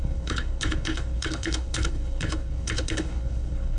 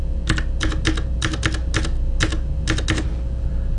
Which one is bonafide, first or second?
second